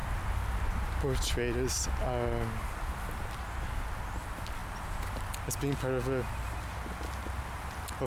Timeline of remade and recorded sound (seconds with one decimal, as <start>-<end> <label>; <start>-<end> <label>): 0.0-8.1 recorded